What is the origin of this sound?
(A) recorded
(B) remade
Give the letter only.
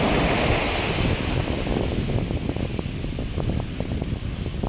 A